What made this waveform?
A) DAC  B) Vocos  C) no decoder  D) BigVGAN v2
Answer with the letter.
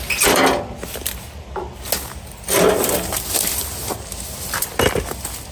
C